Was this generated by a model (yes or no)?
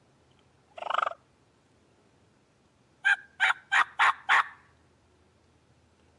no